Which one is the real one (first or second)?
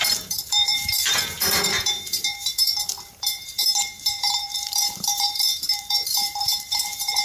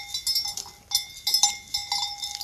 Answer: second